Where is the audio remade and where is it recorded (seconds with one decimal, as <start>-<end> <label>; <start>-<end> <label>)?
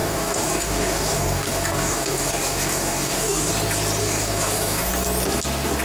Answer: 0.0-3.5 remade; 3.5-4.0 recorded; 4.0-4.9 remade; 4.9-5.8 recorded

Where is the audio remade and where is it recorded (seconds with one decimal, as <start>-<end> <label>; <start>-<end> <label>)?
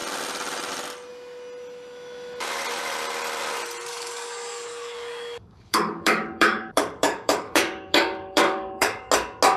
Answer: 0.0-3.9 recorded; 3.9-9.1 remade; 9.1-9.6 recorded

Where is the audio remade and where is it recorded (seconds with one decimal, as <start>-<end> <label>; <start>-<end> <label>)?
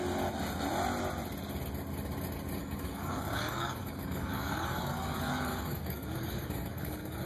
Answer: 0.0-2.6 recorded; 2.6-7.3 remade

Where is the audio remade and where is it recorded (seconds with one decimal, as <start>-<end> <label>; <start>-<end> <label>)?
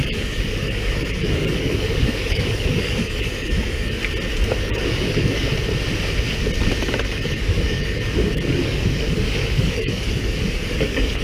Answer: 0.0-4.0 remade; 4.0-4.6 recorded; 4.6-5.5 remade; 5.5-6.8 recorded; 6.8-11.2 remade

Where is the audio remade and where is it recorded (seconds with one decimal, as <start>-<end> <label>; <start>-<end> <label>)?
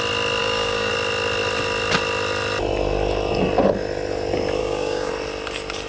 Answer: 0.0-0.4 recorded; 0.4-0.9 remade; 0.9-4.6 recorded; 4.6-5.1 remade; 5.1-5.9 recorded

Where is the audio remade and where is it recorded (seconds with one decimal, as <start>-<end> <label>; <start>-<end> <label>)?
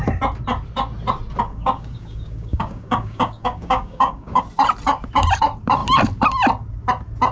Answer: 0.0-1.5 recorded; 1.5-4.4 remade; 4.4-7.3 recorded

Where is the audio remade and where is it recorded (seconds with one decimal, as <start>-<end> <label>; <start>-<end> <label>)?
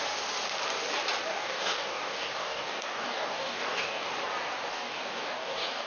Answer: 0.0-1.3 recorded; 1.3-4.1 remade; 4.1-4.7 recorded; 4.7-5.9 remade